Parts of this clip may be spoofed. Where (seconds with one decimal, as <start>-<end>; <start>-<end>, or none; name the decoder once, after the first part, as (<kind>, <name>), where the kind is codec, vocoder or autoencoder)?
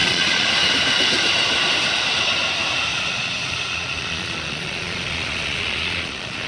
0.0-0.5 (vocoder, Vocos); 2.9-6.5